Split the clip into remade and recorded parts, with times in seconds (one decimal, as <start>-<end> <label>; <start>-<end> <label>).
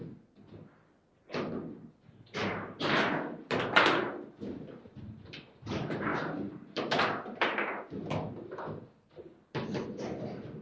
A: 0.0-2.4 recorded; 2.4-3.1 remade; 3.1-6.1 recorded; 6.1-7.0 remade; 7.0-10.6 recorded